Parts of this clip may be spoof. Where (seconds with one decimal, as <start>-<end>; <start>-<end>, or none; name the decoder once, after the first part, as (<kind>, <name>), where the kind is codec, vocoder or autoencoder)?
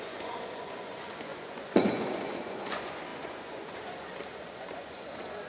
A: 0.0-5.5 (vocoder, Vocos)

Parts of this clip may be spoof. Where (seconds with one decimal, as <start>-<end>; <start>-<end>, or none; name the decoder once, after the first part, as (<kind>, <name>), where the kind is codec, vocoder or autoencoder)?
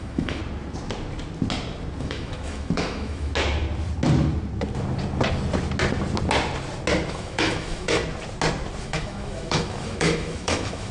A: 0.0-0.4 (autoencoder, DAC-VAE); 2.0-3.3; 7.1-8.0; 8.8-10.9